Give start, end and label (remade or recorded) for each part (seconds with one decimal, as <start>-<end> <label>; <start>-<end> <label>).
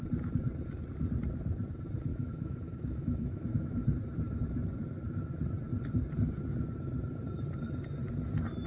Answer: 0.0-2.1 recorded; 2.1-3.8 remade; 3.8-8.7 recorded